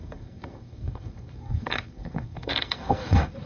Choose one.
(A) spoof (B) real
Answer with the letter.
A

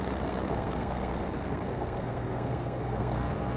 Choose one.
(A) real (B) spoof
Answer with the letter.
B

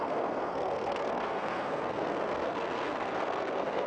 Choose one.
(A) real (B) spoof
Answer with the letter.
B